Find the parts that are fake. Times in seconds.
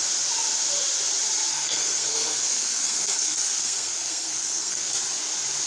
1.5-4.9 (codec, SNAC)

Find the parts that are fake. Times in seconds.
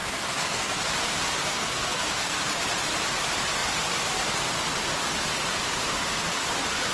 0.0-0.8 (codec, SNAC); 1.5-2.4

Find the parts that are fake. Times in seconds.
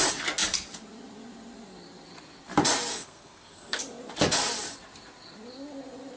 2.9-3.8 (codec, SNAC)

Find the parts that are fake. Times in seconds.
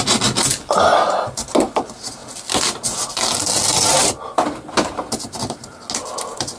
none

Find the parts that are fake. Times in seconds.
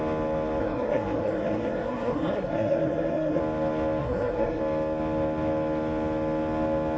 0.6-3.4 (codec, SNAC); 4.0-4.6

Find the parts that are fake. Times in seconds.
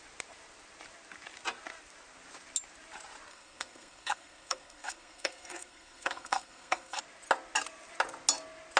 3.3-7.0 (codec, SNAC)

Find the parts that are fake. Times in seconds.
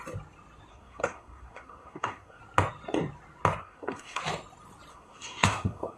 0.7-2.4 (codec, SNAC); 3.6-4.2; 4.9-6.0